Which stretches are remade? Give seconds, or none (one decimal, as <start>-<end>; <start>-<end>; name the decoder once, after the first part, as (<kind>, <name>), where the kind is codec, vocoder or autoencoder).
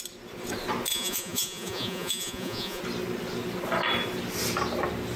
0.9-2.8 (vocoder, Vocos)